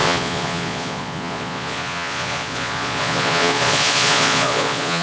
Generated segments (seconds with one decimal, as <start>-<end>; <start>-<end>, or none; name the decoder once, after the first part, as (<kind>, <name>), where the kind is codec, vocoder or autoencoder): 0.0-5.0 (vocoder, Vocos)